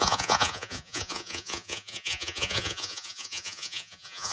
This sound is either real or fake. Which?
fake